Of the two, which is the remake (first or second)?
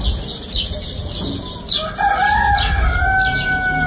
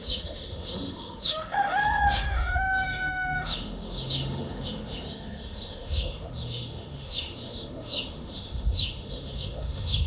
second